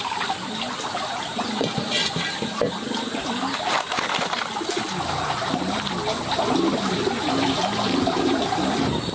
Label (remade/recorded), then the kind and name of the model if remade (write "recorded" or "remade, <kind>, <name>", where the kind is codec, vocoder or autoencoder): recorded